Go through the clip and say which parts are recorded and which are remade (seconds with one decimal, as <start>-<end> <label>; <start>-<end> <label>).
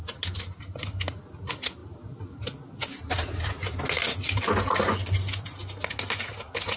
0.0-6.8 recorded